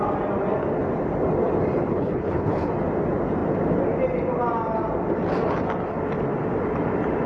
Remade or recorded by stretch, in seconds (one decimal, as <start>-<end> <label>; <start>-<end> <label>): 0.0-1.9 recorded; 1.9-2.7 remade; 2.7-7.3 recorded